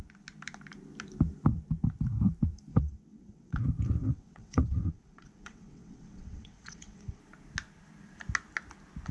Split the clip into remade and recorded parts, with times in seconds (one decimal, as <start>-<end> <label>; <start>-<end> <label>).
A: 0.0-2.7 recorded; 2.7-3.6 remade; 3.6-4.0 recorded; 4.0-7.2 remade; 7.2-9.1 recorded